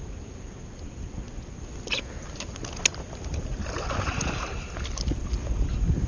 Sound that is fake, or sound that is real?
real